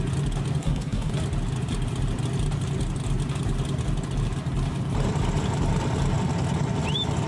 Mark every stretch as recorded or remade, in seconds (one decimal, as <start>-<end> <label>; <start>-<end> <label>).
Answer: 0.0-0.6 recorded; 0.6-1.1 remade; 1.1-7.3 recorded